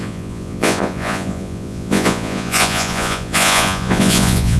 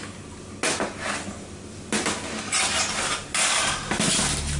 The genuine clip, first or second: second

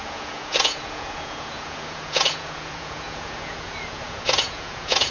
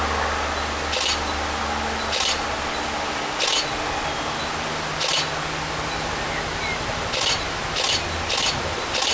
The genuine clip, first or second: second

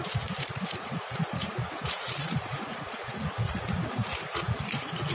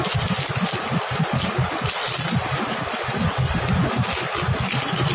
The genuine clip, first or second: second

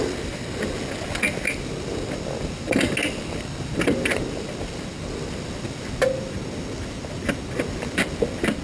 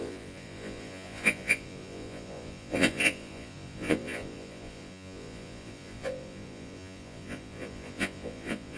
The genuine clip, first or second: first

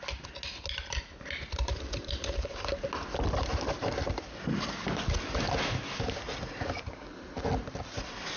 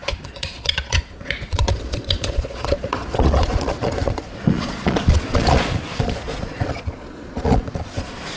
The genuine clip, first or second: first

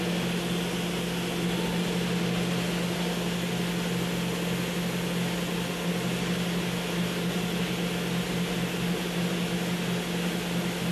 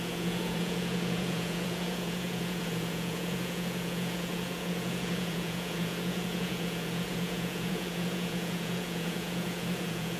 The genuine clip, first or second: first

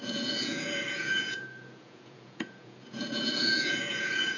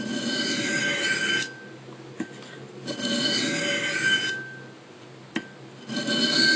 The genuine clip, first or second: second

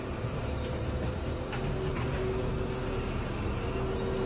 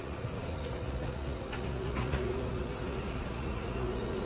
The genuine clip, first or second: first